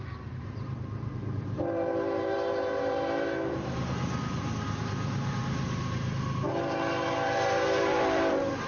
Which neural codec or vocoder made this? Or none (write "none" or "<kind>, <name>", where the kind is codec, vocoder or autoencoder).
vocoder, BigVGAN v2